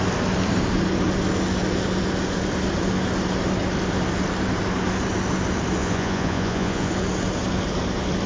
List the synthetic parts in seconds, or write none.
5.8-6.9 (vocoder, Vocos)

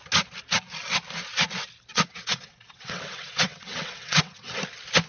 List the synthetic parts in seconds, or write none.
1.9-4.6 (vocoder, WaveNeXt)

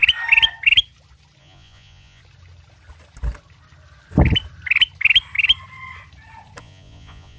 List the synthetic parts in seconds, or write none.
1.4-2.2 (vocoder, Vocos); 6.6-7.4

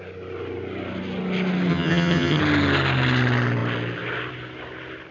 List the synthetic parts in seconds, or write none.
1.7-2.4 (vocoder, HiFi-GAN)

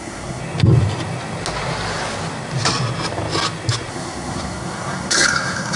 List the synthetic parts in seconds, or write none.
0.0-0.4 (codec, SNAC); 3.9-5.8